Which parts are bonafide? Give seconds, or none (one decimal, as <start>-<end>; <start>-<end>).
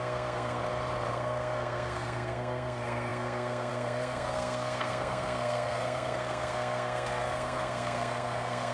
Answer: 0.6-1.1